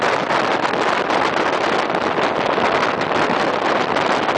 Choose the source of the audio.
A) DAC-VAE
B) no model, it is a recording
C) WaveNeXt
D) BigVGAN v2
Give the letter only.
B